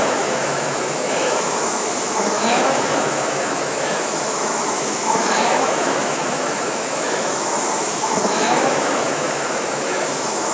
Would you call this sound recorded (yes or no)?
no